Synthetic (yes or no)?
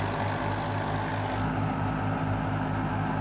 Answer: no